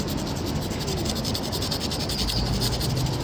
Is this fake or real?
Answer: real